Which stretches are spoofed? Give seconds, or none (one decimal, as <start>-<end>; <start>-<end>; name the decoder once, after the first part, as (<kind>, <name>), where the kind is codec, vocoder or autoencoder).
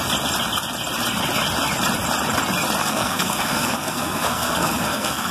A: 2.8-5.3 (codec, SNAC)